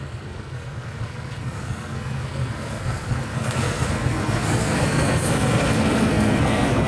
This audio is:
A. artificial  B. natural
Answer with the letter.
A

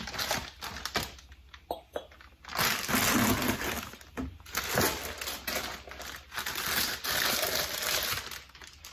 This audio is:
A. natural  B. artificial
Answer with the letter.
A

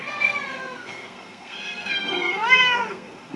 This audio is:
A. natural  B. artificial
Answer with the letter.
B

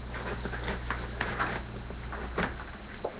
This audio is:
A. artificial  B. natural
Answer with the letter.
B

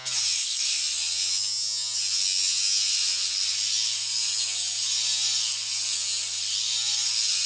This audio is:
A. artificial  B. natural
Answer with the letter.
B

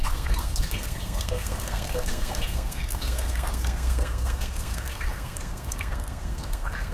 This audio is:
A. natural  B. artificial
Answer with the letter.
B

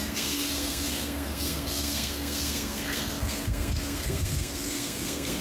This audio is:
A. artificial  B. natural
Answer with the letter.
A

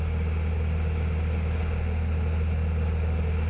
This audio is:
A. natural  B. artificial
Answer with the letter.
A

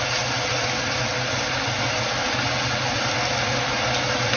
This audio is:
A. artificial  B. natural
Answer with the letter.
B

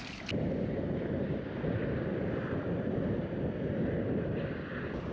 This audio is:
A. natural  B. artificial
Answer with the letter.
A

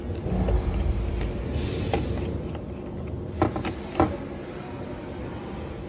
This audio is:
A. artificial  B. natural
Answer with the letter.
B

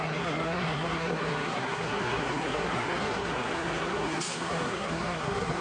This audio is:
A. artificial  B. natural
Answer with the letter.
A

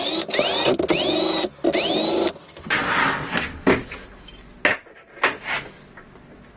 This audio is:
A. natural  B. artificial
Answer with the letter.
A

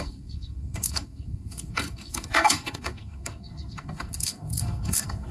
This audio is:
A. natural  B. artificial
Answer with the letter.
B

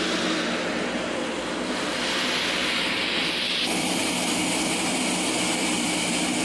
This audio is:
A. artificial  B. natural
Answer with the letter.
B